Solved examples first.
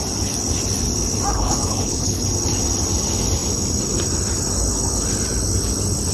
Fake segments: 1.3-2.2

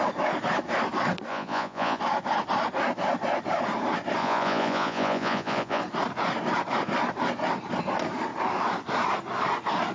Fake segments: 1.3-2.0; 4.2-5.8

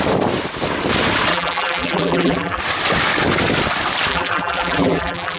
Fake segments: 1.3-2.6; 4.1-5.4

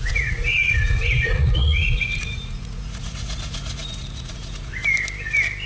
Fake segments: 0.0-4.8

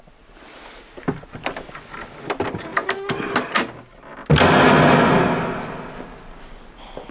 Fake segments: none